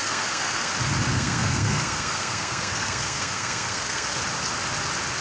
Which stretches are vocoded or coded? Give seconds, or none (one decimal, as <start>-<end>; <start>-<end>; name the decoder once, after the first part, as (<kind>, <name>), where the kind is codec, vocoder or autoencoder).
0.0-0.7 (codec, SNAC); 1.1-4.2